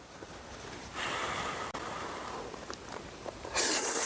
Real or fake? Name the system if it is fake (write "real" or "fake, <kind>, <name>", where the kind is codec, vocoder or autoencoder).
fake, vocoder, BigVGAN v2